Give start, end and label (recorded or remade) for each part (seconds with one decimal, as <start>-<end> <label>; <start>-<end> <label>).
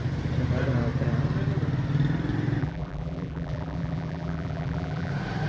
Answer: 0.0-2.6 recorded; 2.6-5.1 remade; 5.1-5.5 recorded